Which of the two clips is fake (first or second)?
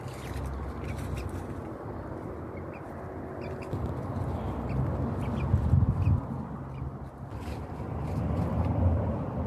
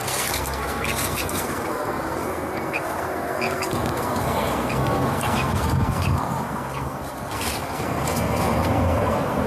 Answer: second